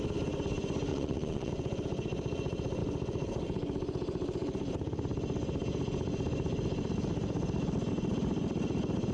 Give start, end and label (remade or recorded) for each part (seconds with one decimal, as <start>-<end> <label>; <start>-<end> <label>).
0.0-0.9 recorded; 0.9-1.5 remade; 1.5-9.1 recorded